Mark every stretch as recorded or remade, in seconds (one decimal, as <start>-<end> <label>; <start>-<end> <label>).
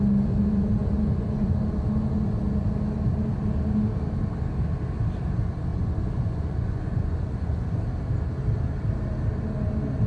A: 0.0-0.8 recorded; 0.8-1.6 remade; 1.6-5.7 recorded; 5.7-7.8 remade; 7.8-10.1 recorded